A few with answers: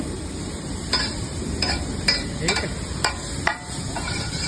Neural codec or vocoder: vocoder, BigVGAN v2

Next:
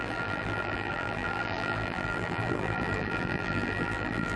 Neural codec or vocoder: vocoder, BigVGAN v2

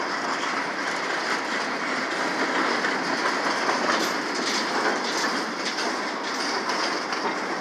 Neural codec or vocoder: none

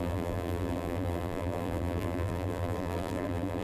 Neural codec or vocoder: vocoder, BigVGAN v2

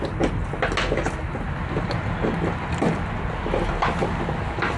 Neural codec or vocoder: none